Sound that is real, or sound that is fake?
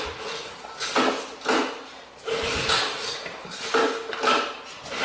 real